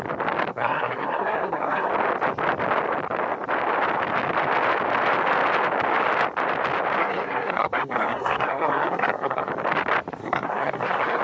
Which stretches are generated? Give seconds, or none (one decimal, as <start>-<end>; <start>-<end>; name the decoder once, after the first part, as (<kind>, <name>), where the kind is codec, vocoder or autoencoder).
0.5-1.9 (codec, SNAC); 7.0-9.5; 10.2-11.2

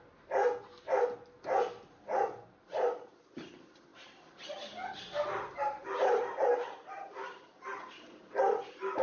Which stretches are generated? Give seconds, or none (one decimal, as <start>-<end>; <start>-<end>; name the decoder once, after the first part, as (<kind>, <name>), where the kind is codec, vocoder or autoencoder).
3.9-7.8 (vocoder, BigVGAN v2)

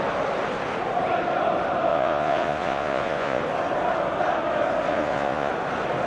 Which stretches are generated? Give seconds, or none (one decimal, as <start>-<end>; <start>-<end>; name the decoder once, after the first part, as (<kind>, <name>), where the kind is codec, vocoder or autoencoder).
1.9-3.4 (vocoder, Vocos); 4.9-5.5

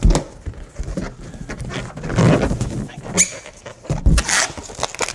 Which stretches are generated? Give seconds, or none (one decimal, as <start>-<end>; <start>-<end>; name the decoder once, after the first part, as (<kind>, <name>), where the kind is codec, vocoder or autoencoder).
none

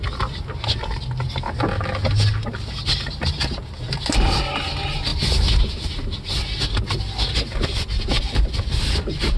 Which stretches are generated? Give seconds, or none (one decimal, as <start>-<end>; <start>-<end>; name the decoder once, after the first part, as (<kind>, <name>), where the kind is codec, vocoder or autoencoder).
none

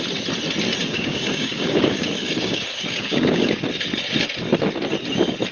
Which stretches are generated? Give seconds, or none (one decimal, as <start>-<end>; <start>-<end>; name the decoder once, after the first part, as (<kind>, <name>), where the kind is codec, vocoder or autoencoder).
0.8-3.5 (codec, DAC)